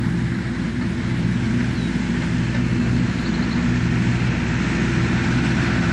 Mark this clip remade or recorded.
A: recorded